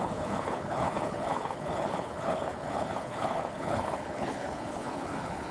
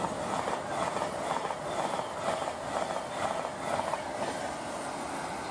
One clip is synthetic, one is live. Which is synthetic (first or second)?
first